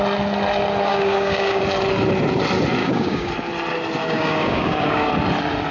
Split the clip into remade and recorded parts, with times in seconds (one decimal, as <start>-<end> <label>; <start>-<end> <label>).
0.0-0.9 recorded; 0.9-1.6 remade; 1.6-2.8 recorded; 2.8-3.3 remade; 3.3-4.0 recorded; 4.0-5.1 remade; 5.1-5.7 recorded